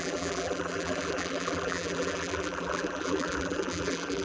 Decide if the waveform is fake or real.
fake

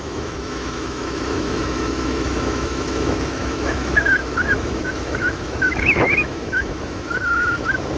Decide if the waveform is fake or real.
fake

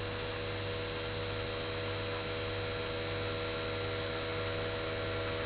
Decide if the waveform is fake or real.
real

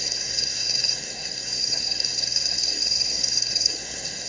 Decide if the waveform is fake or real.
fake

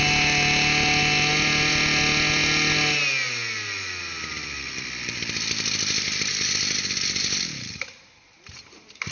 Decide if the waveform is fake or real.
real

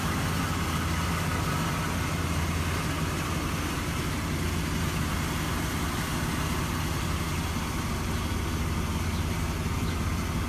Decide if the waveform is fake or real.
real